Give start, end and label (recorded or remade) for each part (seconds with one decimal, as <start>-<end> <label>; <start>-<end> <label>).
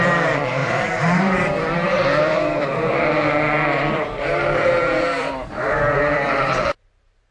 0.0-7.3 remade